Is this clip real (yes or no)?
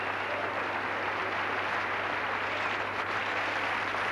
yes